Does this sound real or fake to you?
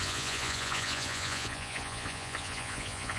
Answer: fake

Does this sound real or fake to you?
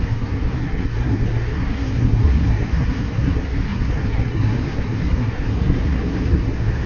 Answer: fake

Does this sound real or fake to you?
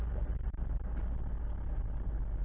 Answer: real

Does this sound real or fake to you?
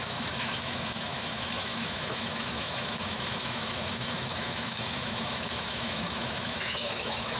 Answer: fake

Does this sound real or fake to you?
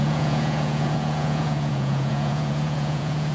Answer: fake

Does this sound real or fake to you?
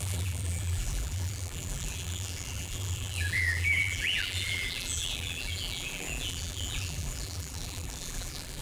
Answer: fake